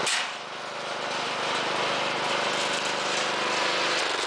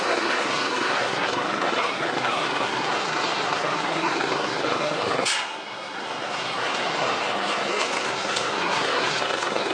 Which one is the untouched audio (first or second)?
first